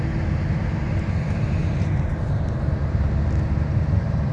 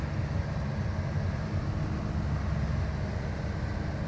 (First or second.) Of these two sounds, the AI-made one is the first